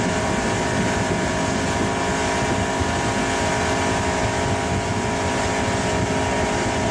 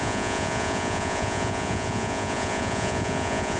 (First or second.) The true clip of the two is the first